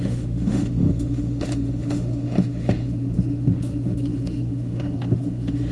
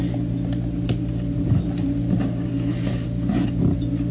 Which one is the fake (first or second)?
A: first